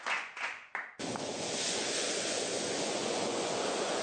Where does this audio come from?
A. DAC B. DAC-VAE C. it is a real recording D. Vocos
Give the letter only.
D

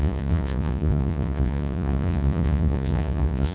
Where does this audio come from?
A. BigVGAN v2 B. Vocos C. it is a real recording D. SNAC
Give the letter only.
B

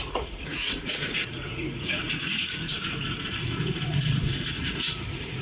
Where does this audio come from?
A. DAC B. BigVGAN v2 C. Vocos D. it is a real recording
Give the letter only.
C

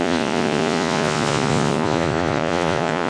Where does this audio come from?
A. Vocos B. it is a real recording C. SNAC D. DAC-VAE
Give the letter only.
A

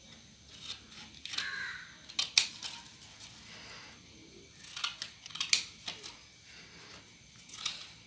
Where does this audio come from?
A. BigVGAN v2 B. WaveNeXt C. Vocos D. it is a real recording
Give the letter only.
D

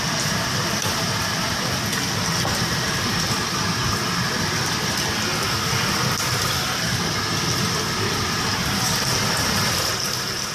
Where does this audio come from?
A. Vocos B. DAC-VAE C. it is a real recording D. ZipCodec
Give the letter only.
C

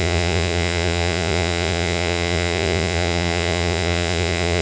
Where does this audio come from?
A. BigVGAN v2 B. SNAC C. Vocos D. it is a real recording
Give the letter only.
C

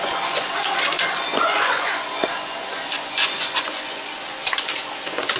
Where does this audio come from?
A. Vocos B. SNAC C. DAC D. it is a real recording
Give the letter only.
A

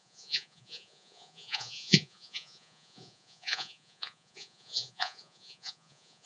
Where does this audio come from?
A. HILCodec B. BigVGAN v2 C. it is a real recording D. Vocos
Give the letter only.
D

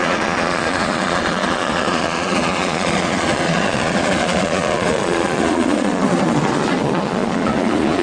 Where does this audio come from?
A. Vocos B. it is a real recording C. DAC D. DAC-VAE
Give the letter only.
A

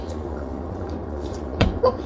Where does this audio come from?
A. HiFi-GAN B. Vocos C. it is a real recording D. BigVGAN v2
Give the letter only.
B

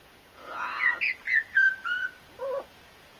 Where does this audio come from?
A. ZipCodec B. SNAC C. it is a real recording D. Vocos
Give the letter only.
D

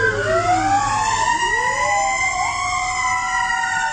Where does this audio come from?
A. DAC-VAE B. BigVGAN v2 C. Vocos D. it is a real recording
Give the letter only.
D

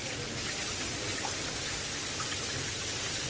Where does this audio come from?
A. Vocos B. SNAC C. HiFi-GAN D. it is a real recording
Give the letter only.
D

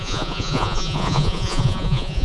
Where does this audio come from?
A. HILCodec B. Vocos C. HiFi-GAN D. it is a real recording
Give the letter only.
B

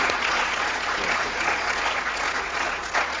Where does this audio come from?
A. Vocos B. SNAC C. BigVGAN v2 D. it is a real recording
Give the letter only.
A